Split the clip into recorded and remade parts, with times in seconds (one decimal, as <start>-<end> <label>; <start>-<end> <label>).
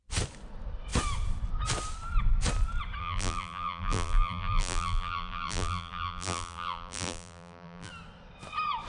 0.0-3.0 recorded; 3.0-7.9 remade; 7.9-8.9 recorded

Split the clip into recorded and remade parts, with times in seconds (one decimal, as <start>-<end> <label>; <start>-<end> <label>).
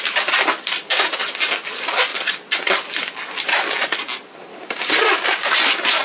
0.0-4.5 recorded; 4.5-5.5 remade; 5.5-6.0 recorded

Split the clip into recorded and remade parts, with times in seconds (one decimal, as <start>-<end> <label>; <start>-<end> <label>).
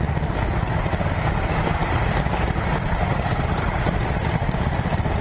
0.0-1.8 recorded; 1.8-4.2 remade; 4.2-5.2 recorded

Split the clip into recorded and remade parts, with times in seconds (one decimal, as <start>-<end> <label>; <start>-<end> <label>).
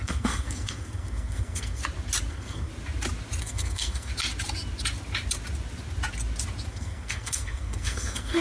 0.0-1.8 remade; 1.8-2.3 recorded; 2.3-2.7 remade; 2.7-3.4 recorded; 3.4-4.1 remade; 4.1-6.7 recorded; 6.7-8.4 remade